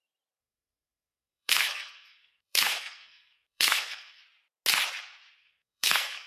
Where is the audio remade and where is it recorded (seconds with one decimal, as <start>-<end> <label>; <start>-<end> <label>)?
0.0-0.4 recorded; 0.4-4.2 remade; 4.2-5.4 recorded; 5.4-6.3 remade

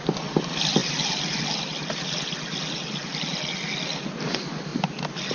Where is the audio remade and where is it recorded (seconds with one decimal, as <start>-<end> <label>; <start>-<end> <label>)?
0.0-5.3 recorded